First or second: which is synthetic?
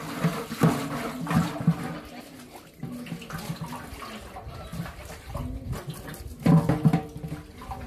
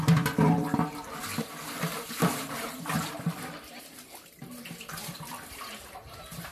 second